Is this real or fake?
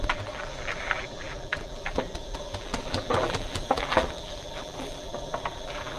fake